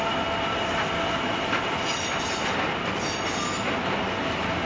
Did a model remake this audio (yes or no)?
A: no